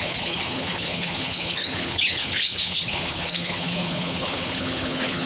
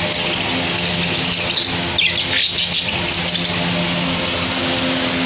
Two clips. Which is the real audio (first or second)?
second